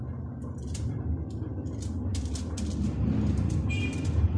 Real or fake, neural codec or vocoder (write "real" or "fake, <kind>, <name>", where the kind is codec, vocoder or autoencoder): real